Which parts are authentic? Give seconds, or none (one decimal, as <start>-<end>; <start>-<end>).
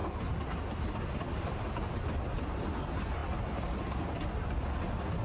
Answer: 0.0-5.2